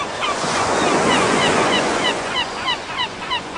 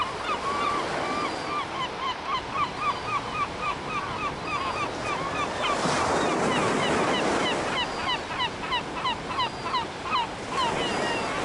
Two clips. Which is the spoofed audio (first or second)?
first